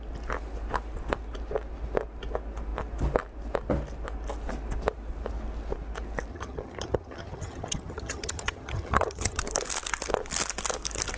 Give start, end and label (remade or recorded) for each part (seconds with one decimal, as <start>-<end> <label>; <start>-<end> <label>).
0.0-6.3 recorded; 6.3-9.4 remade; 9.4-11.2 recorded